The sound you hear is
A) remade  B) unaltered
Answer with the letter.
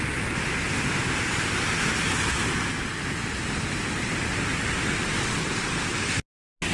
B